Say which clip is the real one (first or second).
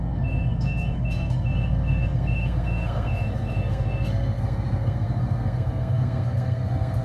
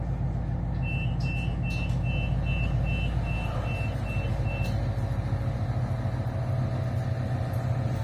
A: second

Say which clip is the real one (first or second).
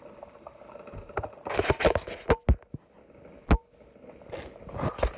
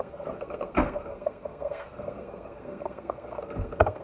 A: first